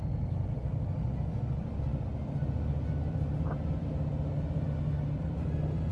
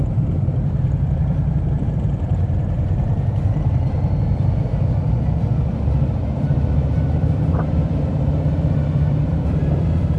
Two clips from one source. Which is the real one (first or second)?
first